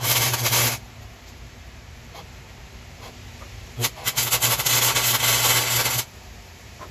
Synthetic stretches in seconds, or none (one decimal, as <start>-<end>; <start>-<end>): 0.0-3.9; 6.0-6.9